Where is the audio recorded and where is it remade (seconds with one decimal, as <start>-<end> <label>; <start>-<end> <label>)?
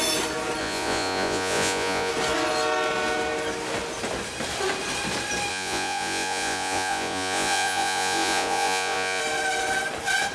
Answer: 0.0-0.6 recorded; 0.6-2.1 remade; 2.1-5.5 recorded; 5.5-9.2 remade; 9.2-10.3 recorded